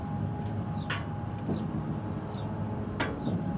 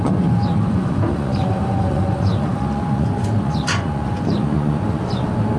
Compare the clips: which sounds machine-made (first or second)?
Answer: second